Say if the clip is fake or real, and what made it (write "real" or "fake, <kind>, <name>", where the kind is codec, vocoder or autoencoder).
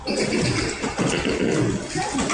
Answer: real